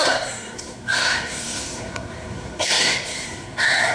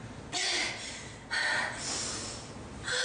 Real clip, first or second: second